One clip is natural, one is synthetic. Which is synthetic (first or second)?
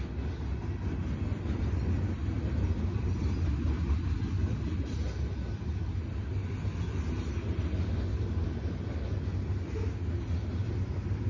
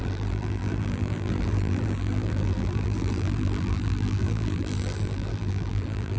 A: second